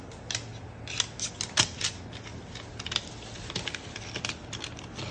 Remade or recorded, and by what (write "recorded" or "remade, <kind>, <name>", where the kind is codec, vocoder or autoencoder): recorded